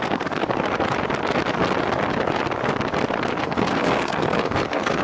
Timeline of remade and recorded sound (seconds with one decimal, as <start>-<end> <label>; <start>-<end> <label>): 0.0-0.4 remade; 0.4-3.4 recorded; 3.4-5.0 remade